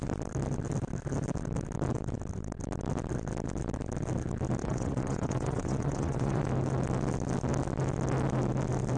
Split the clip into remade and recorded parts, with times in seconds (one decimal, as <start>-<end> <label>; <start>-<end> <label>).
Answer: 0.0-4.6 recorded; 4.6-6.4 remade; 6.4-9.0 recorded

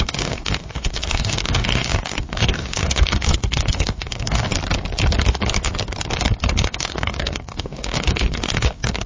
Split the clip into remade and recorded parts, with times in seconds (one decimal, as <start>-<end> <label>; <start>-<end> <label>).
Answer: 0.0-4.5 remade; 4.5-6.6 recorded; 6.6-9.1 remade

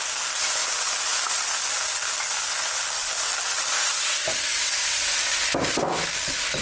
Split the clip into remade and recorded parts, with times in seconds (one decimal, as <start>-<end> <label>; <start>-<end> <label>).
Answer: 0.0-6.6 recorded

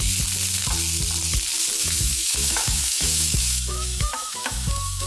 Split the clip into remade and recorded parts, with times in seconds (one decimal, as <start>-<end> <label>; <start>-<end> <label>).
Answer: 0.0-1.8 recorded; 1.8-5.1 remade

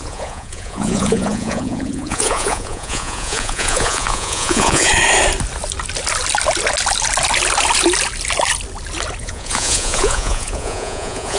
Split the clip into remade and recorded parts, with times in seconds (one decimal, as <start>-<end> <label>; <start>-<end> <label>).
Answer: 0.0-4.9 remade; 4.9-9.2 recorded; 9.2-11.4 remade

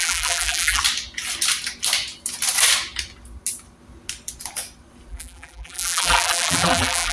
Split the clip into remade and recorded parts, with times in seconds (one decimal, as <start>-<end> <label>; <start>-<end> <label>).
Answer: 0.0-0.8 remade; 0.8-5.1 recorded; 5.1-7.1 remade